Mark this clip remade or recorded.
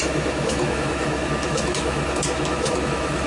remade